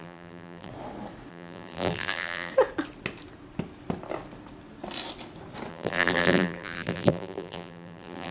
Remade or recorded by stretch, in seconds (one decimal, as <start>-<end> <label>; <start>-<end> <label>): 0.0-0.7 remade; 0.7-1.3 recorded; 1.3-2.5 remade; 2.5-5.7 recorded; 5.7-8.3 remade